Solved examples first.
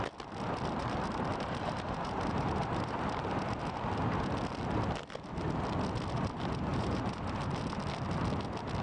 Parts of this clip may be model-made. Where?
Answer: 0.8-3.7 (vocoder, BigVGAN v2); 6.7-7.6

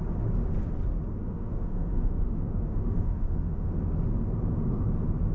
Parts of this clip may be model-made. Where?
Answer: 1.2-3.7 (autoencoder, DAC-VAE)

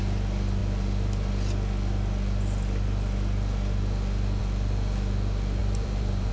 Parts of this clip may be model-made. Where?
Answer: 5.6-6.3 (vocoder, BigVGAN v2)

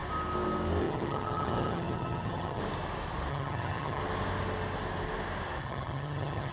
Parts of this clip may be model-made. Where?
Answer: 0.8-2.6 (vocoder, HiFi-GAN); 3.3-4.0; 5.6-6.5

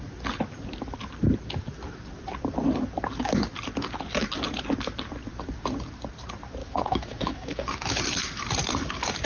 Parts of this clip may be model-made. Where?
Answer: 6.6-8.0 (autoencoder, DAC-VAE)